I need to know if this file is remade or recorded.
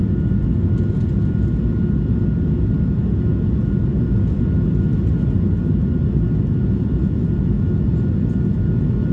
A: recorded